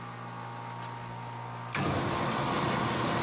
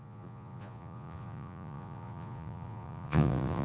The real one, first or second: first